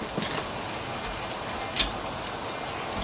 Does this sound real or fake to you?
real